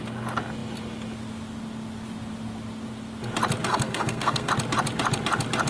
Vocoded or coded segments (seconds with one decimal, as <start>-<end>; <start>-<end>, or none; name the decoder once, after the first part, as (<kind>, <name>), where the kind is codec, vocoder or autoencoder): 3.7-4.5 (codec, SNAC)